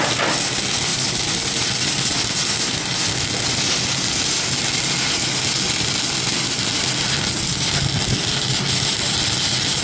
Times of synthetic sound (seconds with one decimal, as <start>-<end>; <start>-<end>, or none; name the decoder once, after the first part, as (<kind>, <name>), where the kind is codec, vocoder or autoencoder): none